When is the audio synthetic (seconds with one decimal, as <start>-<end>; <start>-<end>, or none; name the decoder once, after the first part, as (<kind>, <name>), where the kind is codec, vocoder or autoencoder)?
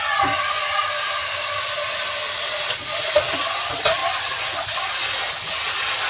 none